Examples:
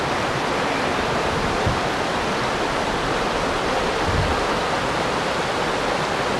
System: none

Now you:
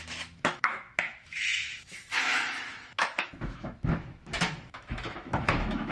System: autoencoder, DAC-VAE